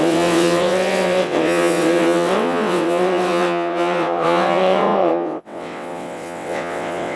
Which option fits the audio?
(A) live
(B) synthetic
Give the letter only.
B